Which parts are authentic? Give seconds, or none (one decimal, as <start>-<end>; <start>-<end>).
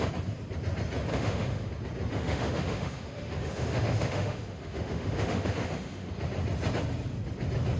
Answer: 0.0-1.1; 1.7-2.1; 6.1-7.8